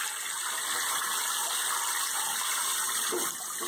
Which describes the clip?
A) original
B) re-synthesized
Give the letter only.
A